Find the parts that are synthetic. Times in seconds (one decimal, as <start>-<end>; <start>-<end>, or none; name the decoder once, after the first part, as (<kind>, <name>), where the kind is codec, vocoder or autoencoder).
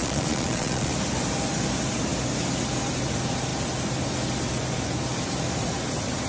0.0-0.9 (vocoder, Vocos)